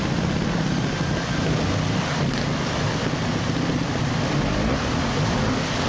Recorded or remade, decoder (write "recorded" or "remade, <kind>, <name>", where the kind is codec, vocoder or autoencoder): recorded